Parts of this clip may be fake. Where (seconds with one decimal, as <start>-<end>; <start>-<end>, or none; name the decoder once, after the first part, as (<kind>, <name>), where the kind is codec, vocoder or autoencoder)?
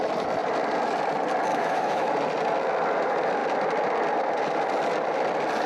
1.5-2.1 (autoencoder, DAC-VAE)